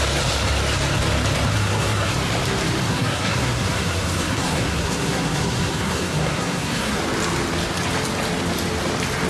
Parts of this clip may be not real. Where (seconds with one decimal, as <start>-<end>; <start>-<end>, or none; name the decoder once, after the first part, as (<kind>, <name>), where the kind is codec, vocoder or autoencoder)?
1.5-2.1 (codec, SNAC); 2.9-7.0